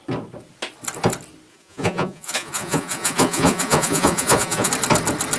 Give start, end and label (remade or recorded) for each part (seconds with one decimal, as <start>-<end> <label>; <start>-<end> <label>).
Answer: 0.0-1.5 recorded; 1.5-4.7 remade; 4.7-5.4 recorded